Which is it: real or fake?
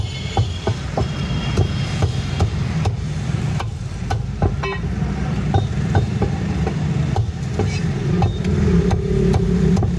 fake